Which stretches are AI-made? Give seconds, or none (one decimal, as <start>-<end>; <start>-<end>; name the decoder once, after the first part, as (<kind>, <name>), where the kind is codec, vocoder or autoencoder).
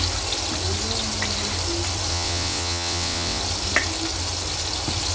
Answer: 2.1-3.4 (vocoder, WaveNeXt)